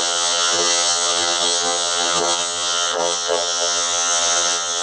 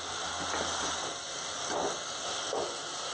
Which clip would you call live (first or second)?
second